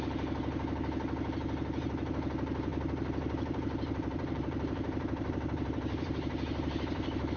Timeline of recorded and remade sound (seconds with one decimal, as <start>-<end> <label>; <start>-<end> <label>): 0.0-2.7 recorded; 2.7-7.4 remade